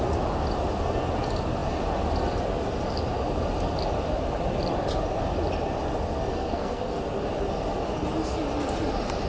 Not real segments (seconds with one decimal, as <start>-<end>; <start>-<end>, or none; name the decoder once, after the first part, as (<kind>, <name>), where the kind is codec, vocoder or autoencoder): 6.3-7.0 (codec, SNAC)

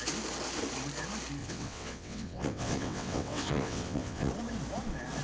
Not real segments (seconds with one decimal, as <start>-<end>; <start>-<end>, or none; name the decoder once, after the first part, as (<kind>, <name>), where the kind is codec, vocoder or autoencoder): 1.4-4.3 (vocoder, WaveNeXt)

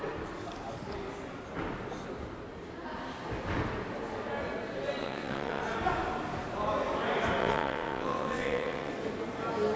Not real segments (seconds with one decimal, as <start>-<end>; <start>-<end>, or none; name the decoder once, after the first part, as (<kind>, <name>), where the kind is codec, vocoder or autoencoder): 5.0-5.6 (vocoder, WaveNeXt); 7.4-8.9